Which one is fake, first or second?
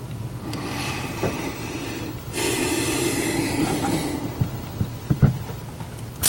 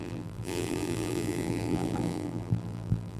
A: second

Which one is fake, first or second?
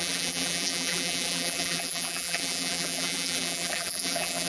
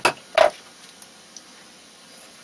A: first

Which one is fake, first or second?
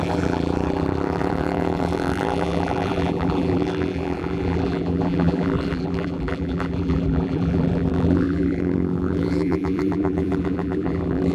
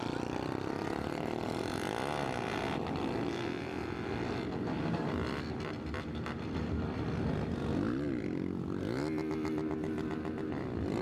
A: first